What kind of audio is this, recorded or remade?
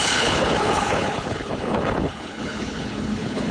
remade